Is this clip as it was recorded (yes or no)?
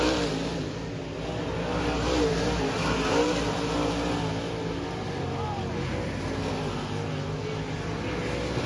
yes